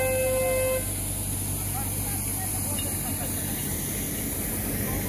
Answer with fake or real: real